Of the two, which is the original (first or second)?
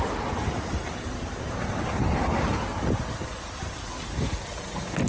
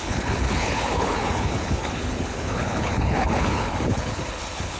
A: first